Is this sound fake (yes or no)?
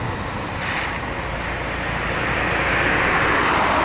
no